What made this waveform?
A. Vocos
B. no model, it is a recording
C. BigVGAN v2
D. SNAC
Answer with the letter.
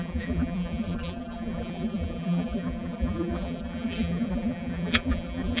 C